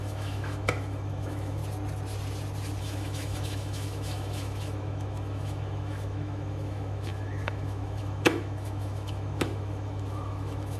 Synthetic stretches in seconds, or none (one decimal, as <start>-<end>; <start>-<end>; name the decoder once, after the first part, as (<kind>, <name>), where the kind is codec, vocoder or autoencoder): 0.0-1.6 (autoencoder, DAC-VAE); 2.8-10.8